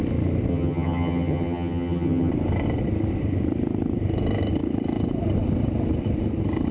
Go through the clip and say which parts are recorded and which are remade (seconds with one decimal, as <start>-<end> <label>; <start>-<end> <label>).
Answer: 0.0-0.5 recorded; 0.5-2.3 remade; 2.3-6.7 recorded